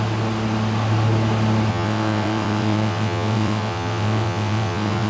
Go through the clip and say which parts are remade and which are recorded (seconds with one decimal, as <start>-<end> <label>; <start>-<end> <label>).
0.0-1.7 recorded; 1.7-5.1 remade